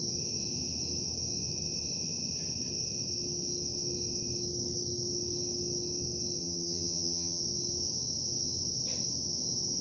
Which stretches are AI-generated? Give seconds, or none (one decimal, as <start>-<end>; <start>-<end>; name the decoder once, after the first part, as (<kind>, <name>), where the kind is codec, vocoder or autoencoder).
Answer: 6.4-7.4 (vocoder, HiFi-GAN)